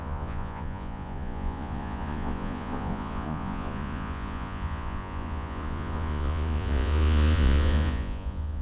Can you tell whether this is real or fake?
fake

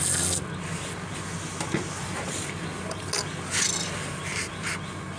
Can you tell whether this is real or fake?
real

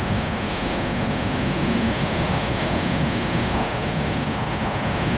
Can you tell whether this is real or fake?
fake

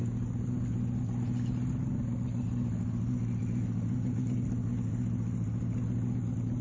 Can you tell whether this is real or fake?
real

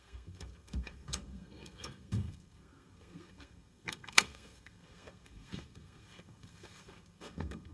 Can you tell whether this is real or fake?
fake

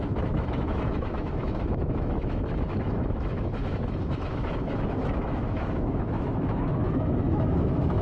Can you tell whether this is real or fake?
fake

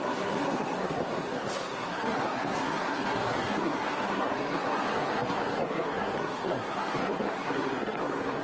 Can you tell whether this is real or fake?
fake